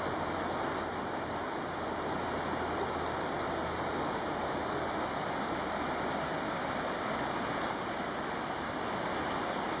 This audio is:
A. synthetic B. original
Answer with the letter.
B